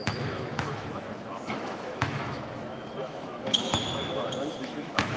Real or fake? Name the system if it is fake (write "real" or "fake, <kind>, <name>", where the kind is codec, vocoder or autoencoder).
fake, autoencoder, DAC-VAE